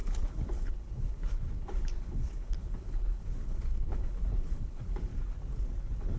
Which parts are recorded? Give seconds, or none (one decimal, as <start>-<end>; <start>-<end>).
5.1-5.8